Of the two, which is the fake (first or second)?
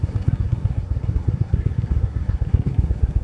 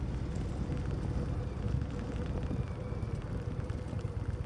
first